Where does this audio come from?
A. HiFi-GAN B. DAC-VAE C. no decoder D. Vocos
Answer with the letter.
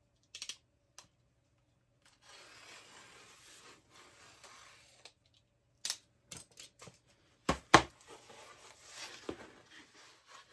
C